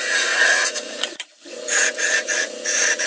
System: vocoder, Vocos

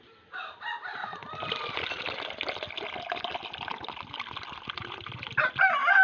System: none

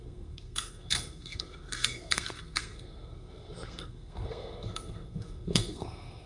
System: codec, SNAC